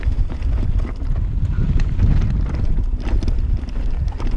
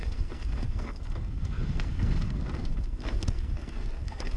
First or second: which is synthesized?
second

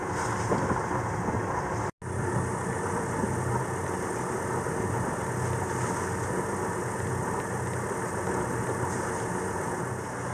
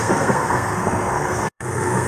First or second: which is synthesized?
second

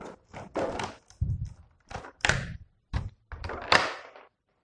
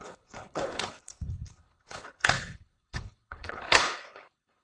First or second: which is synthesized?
second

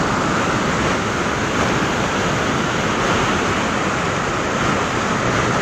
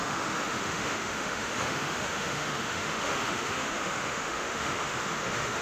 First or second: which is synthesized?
second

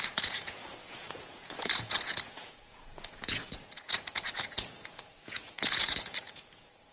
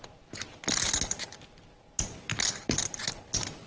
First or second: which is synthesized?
first